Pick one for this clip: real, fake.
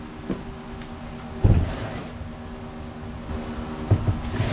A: real